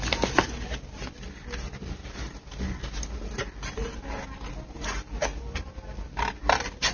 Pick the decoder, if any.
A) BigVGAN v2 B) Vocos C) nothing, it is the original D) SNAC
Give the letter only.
C